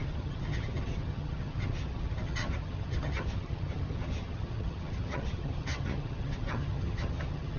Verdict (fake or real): fake